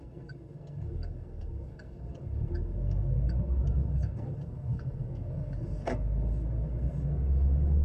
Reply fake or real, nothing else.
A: fake